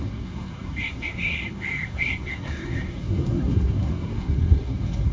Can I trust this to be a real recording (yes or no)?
no